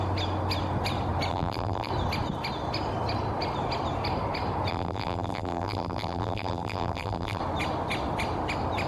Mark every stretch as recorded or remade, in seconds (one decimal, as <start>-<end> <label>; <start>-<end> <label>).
0.0-1.3 recorded; 1.3-1.9 remade; 1.9-4.7 recorded; 4.7-7.4 remade; 7.4-8.9 recorded